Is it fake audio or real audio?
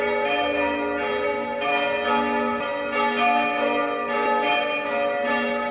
real